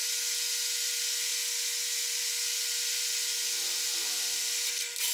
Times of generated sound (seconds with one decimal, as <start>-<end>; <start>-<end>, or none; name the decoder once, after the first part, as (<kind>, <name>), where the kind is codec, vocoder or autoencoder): none